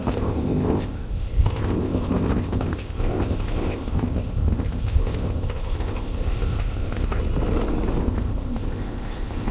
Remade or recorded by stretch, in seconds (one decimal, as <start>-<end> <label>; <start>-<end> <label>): 0.0-7.2 remade; 7.2-8.0 recorded; 8.0-9.5 remade